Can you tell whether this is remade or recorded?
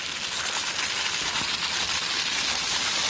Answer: recorded